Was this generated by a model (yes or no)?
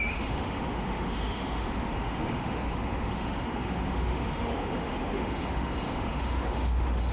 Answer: yes